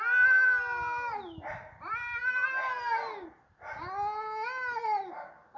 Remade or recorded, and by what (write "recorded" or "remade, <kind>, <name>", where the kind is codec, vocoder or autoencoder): recorded